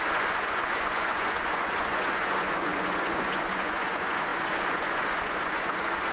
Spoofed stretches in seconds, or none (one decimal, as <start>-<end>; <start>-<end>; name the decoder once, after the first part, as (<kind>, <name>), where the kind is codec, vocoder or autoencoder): 0.0-6.1 (vocoder, Vocos)